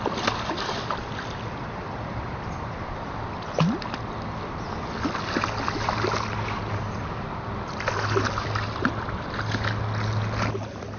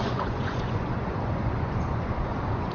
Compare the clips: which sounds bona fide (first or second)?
first